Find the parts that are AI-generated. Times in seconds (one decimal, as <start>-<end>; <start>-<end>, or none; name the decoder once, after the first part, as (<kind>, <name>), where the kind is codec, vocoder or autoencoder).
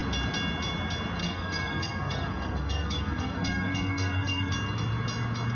1.2-4.5 (codec, SNAC)